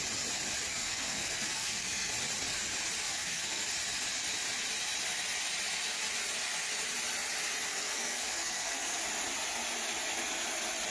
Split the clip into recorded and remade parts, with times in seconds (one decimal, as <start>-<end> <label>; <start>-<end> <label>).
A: 0.0-0.7 recorded; 0.7-2.1 remade; 2.1-3.0 recorded; 3.0-3.7 remade; 3.7-7.7 recorded; 7.7-9.0 remade; 9.0-10.9 recorded